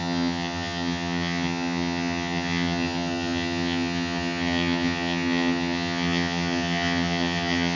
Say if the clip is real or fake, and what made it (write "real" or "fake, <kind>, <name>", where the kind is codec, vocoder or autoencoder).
fake, vocoder, HiFi-GAN